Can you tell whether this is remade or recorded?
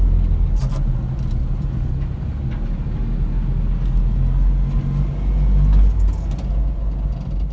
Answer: recorded